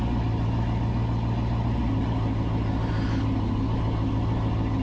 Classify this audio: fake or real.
real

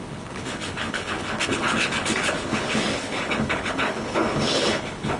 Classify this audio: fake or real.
fake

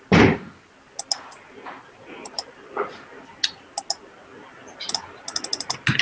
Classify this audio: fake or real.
real